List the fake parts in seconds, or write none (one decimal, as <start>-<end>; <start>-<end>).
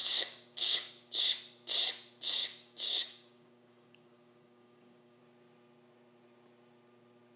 0.0-1.2; 2.4-5.2